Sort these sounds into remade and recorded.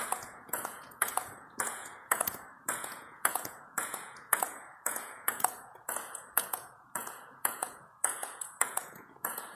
remade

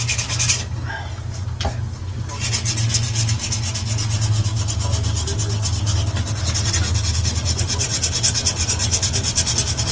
recorded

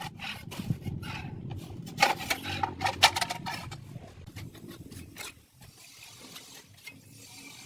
recorded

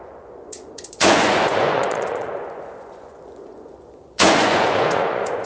remade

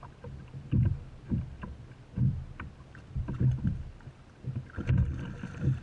recorded